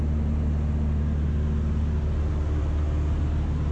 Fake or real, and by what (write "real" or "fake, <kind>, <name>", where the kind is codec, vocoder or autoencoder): real